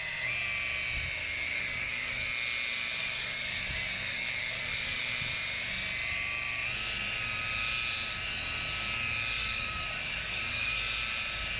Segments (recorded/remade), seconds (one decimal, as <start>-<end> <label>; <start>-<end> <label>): 0.0-1.2 recorded; 1.2-2.3 remade; 2.3-3.0 recorded; 3.0-5.0 remade; 5.0-9.4 recorded; 9.4-10.8 remade; 10.8-11.6 recorded